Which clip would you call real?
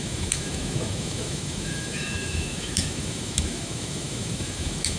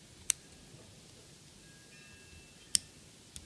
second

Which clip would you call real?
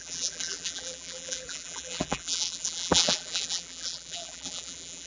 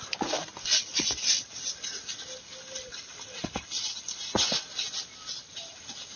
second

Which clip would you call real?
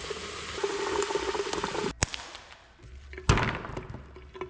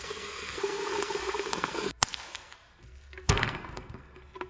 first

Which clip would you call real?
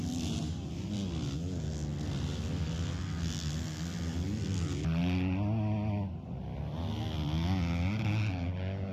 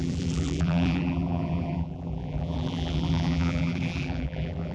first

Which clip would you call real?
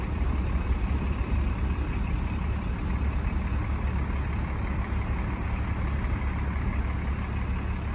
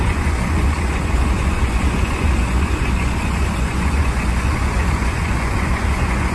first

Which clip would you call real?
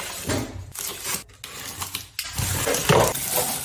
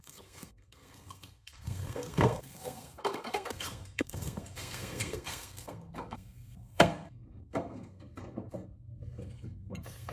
first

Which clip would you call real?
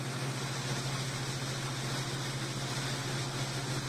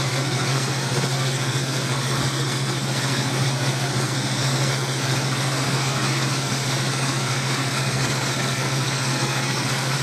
first